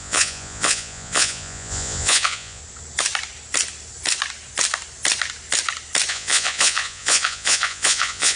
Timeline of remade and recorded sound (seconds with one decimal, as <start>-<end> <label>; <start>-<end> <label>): 0.0-2.6 remade; 2.6-6.1 recorded; 6.1-8.4 remade